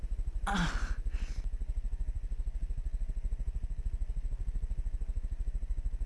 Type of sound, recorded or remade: recorded